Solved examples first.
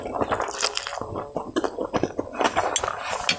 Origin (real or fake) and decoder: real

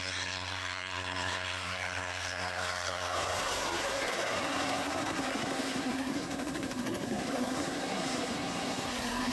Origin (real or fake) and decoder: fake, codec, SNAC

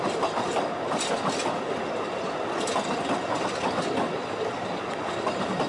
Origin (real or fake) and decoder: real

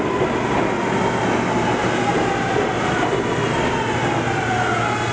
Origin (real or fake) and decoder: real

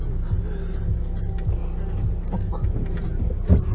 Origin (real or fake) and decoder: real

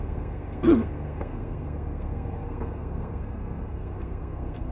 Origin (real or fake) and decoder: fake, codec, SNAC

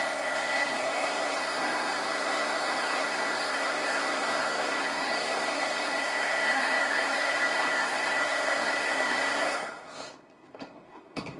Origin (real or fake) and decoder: fake, codec, SNAC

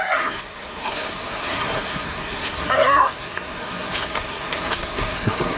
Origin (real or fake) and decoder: fake, codec, SNAC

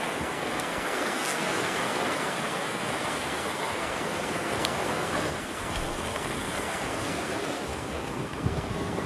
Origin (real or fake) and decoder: fake, codec, SNAC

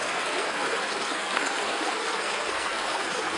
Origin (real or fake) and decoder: fake, codec, SNAC